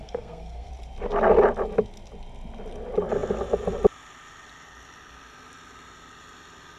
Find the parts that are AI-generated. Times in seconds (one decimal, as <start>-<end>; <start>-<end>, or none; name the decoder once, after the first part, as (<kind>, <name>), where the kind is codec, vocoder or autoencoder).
0.0-0.7 (codec, SNAC)